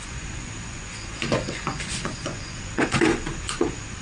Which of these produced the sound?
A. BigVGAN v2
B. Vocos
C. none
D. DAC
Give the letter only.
B